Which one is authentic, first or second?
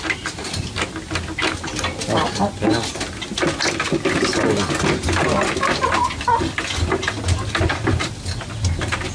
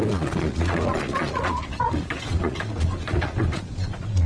first